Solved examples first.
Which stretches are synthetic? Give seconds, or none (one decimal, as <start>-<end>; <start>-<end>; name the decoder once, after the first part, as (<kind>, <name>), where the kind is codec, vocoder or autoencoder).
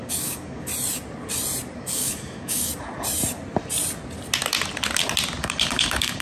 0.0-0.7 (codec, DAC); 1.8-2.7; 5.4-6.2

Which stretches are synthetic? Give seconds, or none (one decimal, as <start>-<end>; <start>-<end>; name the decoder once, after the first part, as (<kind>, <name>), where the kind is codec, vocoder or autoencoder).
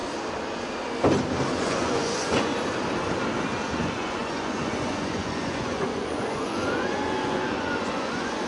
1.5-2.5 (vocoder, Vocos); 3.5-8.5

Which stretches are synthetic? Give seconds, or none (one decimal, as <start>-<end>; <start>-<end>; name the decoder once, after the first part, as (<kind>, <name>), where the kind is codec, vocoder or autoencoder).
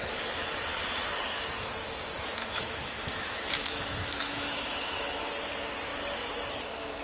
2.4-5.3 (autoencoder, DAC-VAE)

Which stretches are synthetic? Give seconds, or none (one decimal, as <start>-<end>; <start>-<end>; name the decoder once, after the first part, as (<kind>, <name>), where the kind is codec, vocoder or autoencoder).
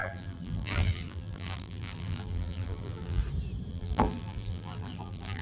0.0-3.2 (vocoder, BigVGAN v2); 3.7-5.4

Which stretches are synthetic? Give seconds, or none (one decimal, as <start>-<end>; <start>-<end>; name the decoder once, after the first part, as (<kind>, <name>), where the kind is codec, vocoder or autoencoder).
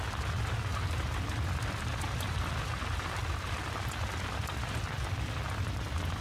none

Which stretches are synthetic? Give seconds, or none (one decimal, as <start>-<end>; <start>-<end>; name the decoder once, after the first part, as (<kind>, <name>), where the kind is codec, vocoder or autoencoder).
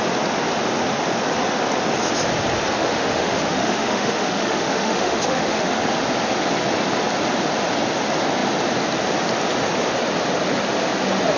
2.8-5.8 (autoencoder, DAC-VAE)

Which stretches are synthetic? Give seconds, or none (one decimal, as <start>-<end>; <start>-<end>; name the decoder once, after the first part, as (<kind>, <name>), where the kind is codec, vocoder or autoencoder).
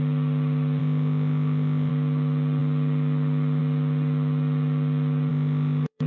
0.8-1.9 (autoencoder, DAC-VAE); 5.3-6.1